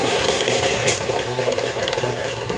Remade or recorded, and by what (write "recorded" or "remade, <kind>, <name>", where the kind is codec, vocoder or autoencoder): remade, codec, SNAC